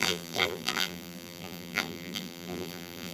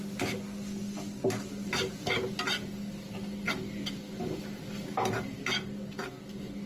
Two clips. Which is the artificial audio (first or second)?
first